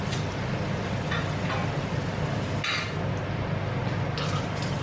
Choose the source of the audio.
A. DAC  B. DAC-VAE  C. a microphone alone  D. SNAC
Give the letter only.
C